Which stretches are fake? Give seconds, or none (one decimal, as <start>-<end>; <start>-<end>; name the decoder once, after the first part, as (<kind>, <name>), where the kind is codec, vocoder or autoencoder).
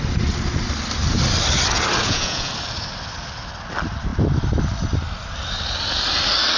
2.0-2.5 (vocoder, Vocos)